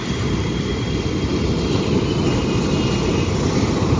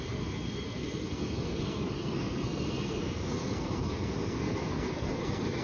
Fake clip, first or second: second